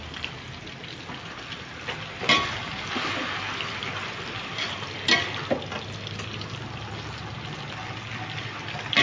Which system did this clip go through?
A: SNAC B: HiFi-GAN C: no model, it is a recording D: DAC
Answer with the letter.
C